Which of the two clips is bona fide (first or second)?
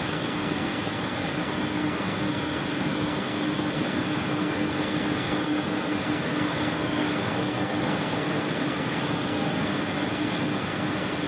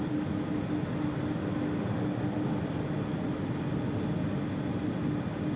second